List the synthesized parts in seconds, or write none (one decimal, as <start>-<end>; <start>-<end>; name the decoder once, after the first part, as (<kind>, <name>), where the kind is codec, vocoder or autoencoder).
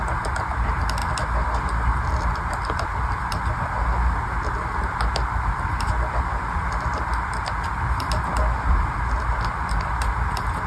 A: none